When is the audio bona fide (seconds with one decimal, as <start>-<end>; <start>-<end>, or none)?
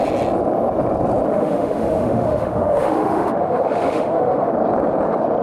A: 0.0-1.3; 4.5-5.4